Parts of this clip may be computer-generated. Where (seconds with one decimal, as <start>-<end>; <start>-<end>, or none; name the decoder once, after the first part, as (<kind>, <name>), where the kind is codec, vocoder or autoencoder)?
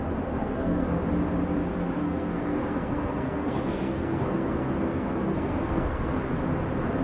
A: 0.4-1.0 (codec, SNAC); 2.0-6.2